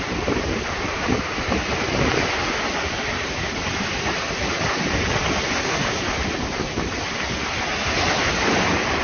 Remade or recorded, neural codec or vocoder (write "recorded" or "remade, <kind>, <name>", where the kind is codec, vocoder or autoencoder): recorded